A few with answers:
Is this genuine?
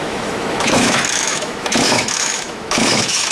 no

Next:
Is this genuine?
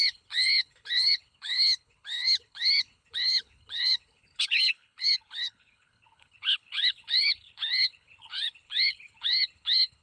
no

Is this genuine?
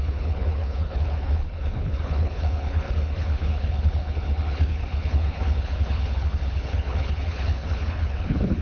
no